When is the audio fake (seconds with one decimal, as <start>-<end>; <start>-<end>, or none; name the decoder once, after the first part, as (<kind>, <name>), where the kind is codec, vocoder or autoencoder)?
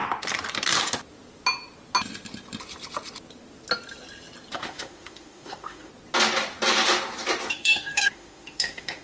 4.6-5.9 (autoencoder, DAC-VAE); 7.5-9.0